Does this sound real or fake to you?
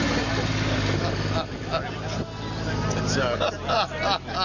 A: real